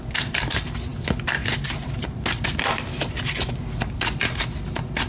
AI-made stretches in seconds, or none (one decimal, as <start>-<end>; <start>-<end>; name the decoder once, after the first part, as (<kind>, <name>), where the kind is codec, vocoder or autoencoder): none